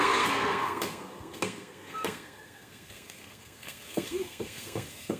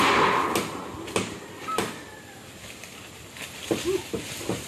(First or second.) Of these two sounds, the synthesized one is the first